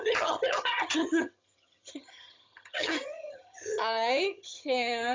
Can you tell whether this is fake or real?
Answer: fake